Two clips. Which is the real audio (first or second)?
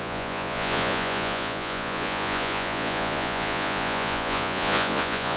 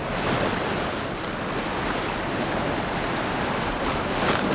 second